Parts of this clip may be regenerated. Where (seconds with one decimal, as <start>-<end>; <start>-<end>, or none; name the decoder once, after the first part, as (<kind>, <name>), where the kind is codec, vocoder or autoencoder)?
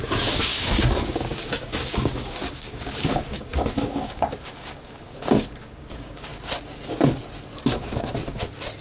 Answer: 0.0-6.3 (codec, DAC); 7.6-8.2